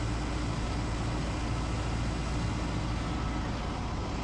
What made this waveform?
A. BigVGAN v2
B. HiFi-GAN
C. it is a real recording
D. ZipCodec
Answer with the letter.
C